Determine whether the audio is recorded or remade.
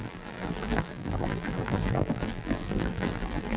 remade